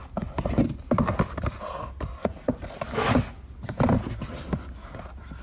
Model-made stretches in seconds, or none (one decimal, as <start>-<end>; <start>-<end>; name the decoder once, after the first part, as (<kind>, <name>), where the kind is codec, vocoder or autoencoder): 2.2-2.7 (vocoder, Vocos)